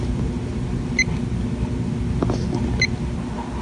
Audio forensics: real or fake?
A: real